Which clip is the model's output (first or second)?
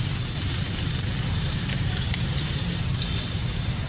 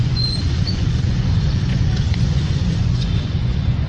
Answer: second